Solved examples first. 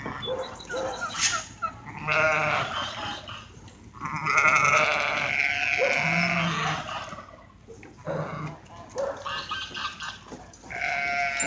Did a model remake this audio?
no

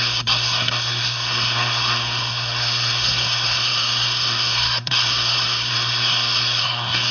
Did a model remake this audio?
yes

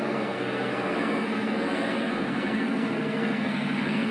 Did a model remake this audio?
yes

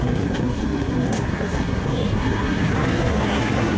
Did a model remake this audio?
yes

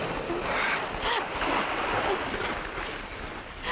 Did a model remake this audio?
no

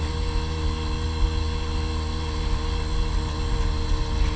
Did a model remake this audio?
no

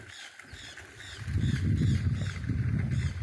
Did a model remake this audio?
no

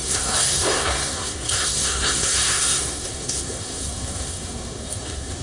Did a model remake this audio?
yes